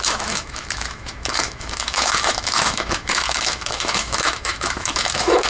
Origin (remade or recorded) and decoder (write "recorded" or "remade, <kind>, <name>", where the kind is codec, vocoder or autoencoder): remade, autoencoder, DAC-VAE